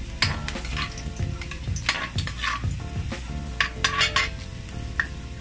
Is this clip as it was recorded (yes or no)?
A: yes